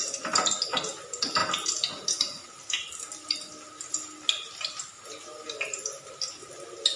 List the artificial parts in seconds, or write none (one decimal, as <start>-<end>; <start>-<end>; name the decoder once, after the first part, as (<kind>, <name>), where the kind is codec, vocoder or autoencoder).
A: none